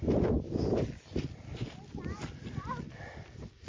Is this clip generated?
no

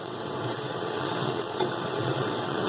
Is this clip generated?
yes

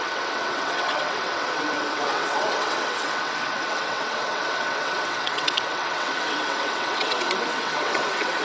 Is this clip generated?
yes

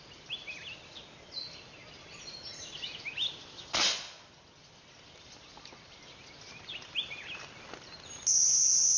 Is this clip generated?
no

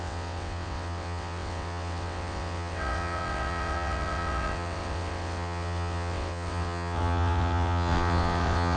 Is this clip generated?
yes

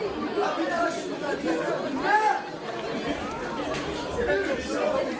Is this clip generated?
no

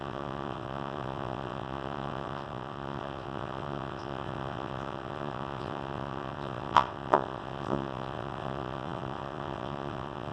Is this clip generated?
yes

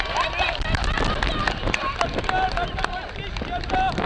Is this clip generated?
no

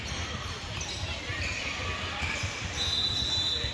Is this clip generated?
no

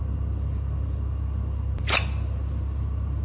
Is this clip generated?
no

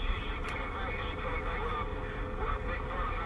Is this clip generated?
no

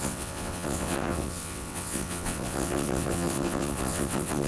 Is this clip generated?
yes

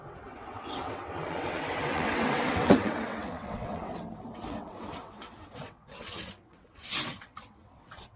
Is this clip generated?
yes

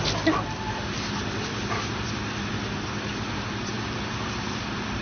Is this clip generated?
no